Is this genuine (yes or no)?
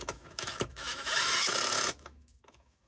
no